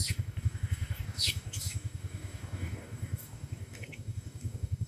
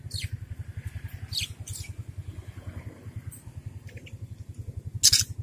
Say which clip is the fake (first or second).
first